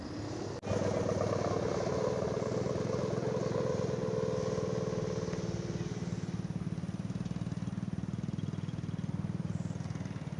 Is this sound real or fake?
real